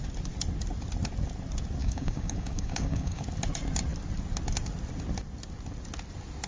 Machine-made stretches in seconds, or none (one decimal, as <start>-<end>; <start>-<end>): 1.8-3.2